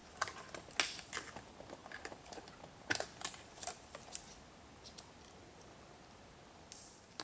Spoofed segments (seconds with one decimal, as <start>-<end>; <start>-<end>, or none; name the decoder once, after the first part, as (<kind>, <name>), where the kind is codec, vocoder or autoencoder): none